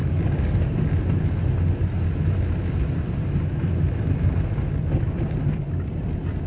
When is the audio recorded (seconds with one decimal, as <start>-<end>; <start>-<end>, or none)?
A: 0.0-6.5